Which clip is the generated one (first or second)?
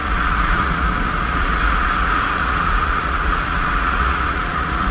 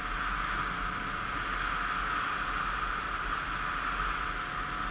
first